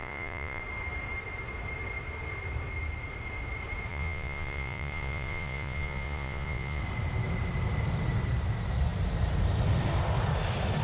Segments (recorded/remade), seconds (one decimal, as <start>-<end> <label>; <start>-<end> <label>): 0.0-0.6 remade; 0.6-3.9 recorded; 3.9-6.8 remade; 6.8-10.8 recorded